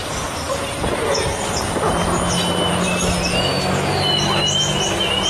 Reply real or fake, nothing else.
real